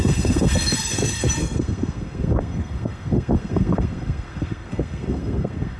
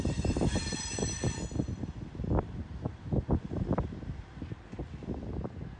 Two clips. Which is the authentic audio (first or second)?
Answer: second